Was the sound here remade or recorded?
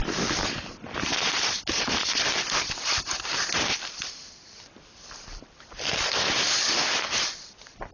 recorded